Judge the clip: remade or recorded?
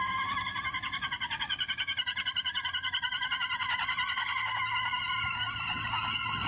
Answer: recorded